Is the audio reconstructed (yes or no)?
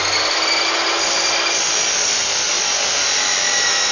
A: no